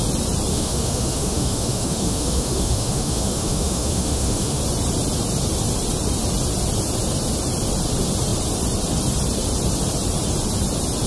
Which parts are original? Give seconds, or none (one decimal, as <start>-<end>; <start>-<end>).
0.0-0.5; 4.6-11.1